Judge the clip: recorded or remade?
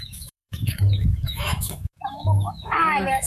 remade